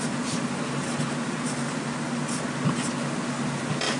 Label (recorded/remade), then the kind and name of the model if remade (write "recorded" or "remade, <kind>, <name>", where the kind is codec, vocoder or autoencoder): recorded